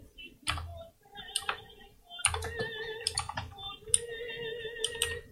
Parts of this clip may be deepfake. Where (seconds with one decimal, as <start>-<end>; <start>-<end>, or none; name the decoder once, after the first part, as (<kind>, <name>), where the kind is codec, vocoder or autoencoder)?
none